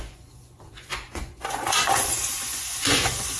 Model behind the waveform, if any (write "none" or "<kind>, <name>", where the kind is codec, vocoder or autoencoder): vocoder, Vocos